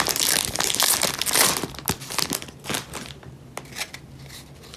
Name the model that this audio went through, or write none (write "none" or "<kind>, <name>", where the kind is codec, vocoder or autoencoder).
none